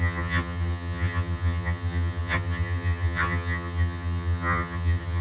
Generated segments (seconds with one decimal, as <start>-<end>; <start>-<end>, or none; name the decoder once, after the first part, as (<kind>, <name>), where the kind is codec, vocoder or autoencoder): 0.0-5.2 (vocoder, HiFi-GAN)